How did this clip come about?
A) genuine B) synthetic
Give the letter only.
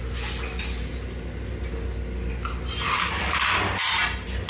A